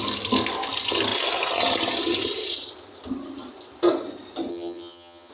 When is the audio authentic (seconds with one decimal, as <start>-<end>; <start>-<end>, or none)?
0.0-4.5